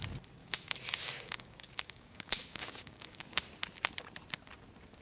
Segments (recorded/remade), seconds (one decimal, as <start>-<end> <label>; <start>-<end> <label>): 0.0-0.4 recorded; 0.4-3.4 remade; 3.4-5.0 recorded